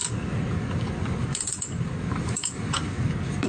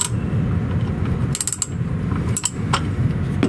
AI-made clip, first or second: first